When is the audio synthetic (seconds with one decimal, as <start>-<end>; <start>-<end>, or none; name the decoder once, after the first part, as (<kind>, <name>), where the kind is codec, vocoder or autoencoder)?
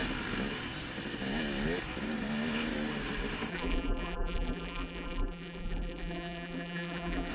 3.5-7.3 (vocoder, BigVGAN v2)